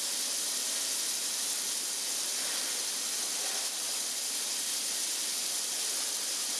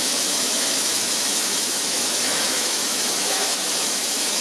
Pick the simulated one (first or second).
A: second